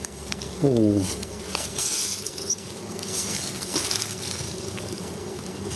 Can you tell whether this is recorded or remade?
remade